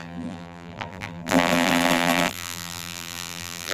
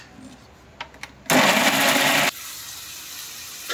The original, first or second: second